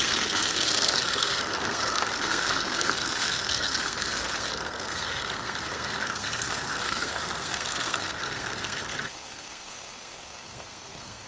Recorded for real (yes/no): no